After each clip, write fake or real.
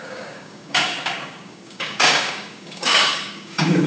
fake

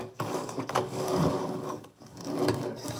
fake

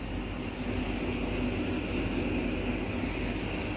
real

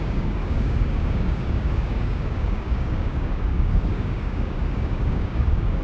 fake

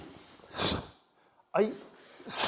real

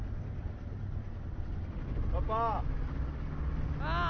real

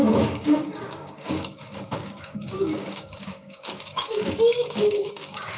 fake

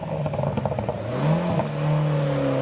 real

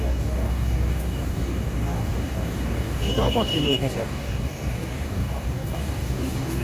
fake